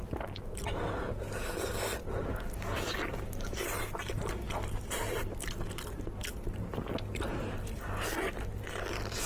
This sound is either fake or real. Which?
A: real